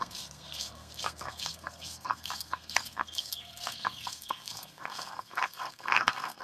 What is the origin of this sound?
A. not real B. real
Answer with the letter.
A